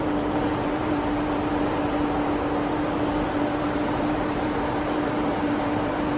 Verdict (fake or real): fake